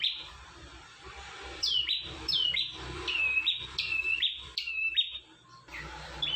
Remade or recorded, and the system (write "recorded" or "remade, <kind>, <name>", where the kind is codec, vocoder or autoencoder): remade, vocoder, BigVGAN v2